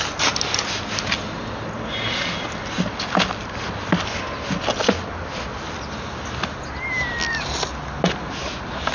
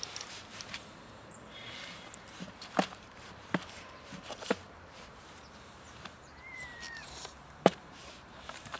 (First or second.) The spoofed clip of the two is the second